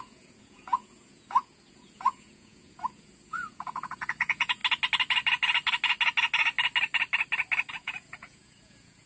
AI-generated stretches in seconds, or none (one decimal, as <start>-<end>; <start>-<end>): 0.0-4.6; 7.7-9.1